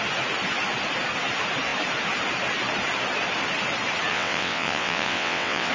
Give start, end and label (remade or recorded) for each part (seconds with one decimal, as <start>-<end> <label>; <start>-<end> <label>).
0.0-4.1 recorded; 4.1-5.7 remade